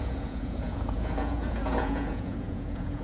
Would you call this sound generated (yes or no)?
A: yes